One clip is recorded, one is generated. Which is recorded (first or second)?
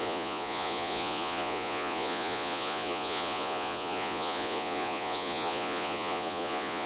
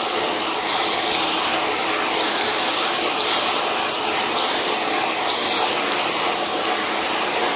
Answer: second